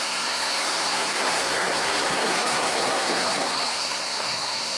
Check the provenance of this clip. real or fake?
fake